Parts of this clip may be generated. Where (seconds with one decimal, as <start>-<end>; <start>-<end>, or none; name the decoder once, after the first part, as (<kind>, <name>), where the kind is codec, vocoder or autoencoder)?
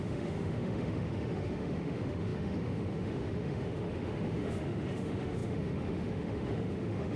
0.0-7.2 (autoencoder, DAC-VAE)